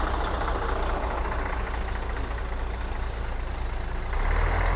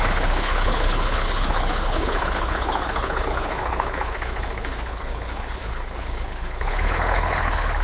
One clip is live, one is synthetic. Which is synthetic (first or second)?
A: second